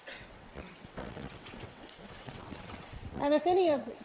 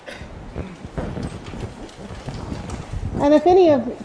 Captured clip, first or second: second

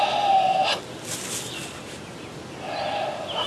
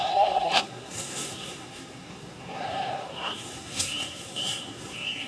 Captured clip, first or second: first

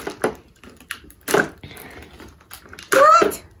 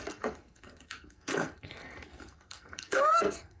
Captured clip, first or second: first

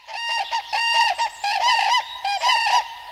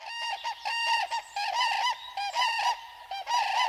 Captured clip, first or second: second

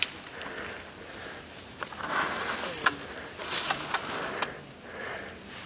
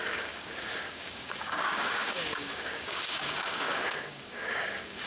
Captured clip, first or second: first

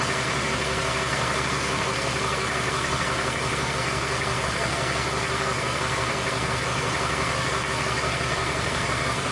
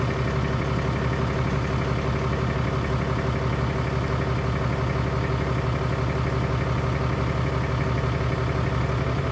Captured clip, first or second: second